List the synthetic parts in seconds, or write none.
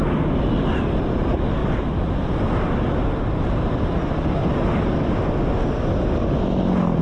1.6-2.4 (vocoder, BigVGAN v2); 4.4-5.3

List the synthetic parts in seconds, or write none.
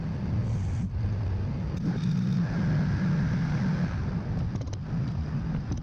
none